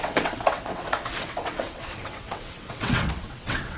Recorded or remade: remade